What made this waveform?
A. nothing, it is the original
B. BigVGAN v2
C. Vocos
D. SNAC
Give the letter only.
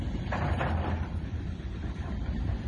B